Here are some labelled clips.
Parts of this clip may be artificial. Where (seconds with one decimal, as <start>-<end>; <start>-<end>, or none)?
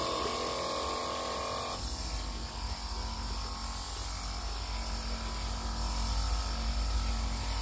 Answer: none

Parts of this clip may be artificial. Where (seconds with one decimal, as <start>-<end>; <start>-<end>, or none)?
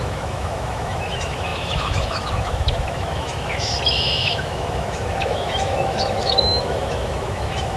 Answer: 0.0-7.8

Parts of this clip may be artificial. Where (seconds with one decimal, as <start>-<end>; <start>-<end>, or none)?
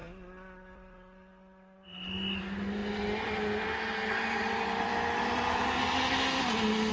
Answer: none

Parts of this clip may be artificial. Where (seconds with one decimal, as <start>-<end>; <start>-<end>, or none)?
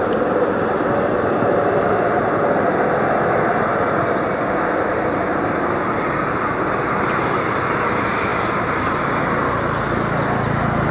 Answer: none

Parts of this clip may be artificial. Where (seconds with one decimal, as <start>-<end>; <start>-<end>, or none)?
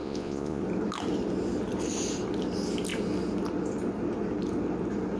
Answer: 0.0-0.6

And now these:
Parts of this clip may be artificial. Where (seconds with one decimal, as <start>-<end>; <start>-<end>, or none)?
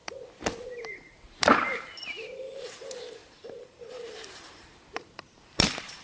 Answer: 0.9-6.0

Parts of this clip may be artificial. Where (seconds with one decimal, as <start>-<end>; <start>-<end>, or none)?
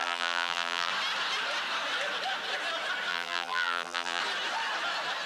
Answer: 0.0-0.9; 3.1-4.2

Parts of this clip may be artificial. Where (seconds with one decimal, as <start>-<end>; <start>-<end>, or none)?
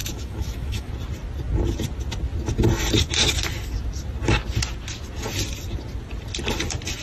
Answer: 0.0-0.9